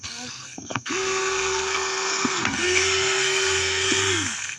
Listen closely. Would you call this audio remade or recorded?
remade